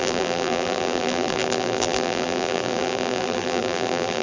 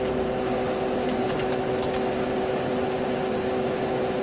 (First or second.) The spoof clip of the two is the first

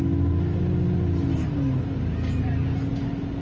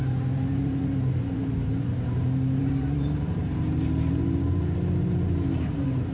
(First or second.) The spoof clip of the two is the second